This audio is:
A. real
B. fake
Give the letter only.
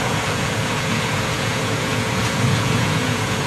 B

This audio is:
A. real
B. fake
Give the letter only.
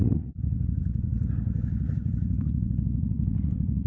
B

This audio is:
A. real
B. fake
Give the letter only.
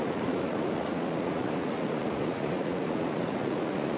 B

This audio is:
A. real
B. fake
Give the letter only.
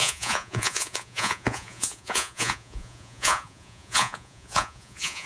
B